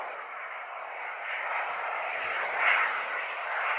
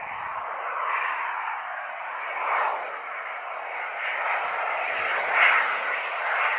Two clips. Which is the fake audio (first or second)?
first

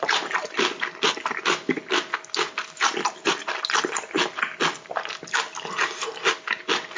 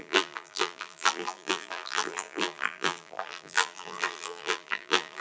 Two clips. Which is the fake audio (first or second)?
second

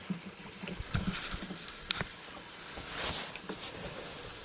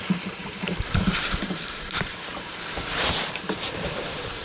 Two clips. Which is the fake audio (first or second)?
second